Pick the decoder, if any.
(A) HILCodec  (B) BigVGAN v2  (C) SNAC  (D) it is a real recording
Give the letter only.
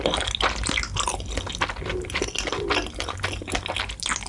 D